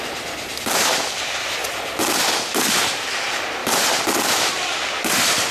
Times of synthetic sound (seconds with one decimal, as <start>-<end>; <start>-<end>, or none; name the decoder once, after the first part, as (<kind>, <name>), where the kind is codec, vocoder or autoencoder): 3.6-4.5 (vocoder, BigVGAN v2)